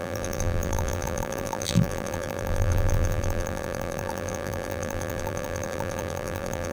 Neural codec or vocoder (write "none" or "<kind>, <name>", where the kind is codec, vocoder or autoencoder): vocoder, BigVGAN v2